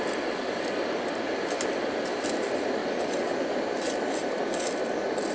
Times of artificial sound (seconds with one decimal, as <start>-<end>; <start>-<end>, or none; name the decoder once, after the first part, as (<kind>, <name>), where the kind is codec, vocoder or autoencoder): none